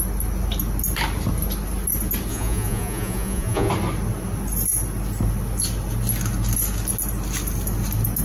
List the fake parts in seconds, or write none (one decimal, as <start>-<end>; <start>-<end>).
2.3-3.7